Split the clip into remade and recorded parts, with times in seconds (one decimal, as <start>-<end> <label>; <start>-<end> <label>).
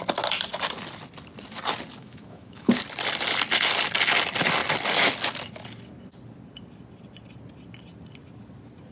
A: 0.0-2.0 recorded; 2.0-2.8 remade; 2.8-8.9 recorded